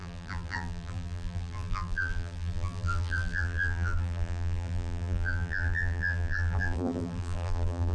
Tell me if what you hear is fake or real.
fake